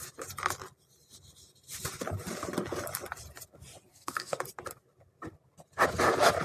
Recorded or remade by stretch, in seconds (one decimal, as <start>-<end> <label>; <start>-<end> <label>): 0.0-3.9 recorded; 3.9-4.4 remade; 4.4-6.4 recorded